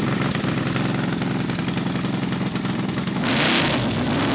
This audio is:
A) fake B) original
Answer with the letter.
B